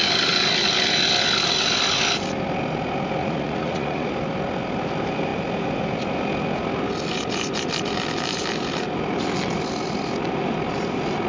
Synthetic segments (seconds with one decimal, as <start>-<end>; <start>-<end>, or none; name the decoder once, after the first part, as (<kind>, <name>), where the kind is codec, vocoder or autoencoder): 3.2-4.1 (vocoder, Vocos)